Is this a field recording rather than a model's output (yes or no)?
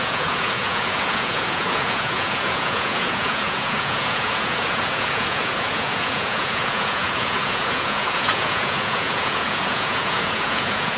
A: no